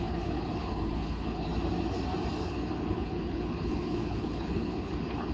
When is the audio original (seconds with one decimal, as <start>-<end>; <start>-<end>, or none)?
1.5-2.4